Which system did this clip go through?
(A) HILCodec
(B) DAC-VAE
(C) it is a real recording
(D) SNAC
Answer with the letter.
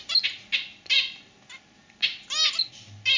C